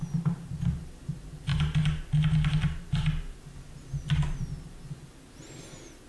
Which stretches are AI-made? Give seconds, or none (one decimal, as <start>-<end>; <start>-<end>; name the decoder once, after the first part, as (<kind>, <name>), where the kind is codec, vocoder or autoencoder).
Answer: none